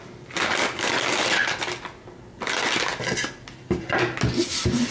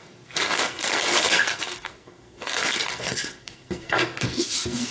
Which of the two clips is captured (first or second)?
first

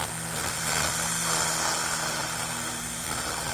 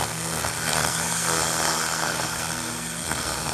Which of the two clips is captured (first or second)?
first